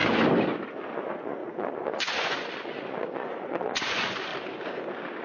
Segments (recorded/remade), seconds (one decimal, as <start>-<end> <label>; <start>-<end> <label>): 0.0-0.9 recorded; 0.9-4.3 remade; 4.3-5.2 recorded